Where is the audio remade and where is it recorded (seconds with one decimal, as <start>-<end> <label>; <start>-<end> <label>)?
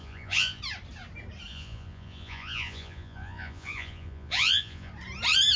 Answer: 0.0-0.6 remade; 0.6-1.5 recorded; 1.5-4.9 remade; 4.9-5.6 recorded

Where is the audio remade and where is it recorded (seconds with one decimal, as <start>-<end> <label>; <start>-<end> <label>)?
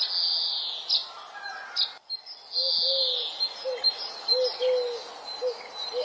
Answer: 0.0-6.0 recorded